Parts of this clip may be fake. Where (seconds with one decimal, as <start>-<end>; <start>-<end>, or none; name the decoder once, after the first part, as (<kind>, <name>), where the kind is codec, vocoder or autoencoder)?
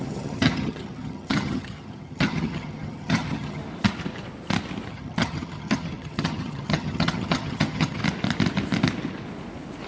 0.0-3.6 (vocoder, HiFi-GAN); 4.9-8.0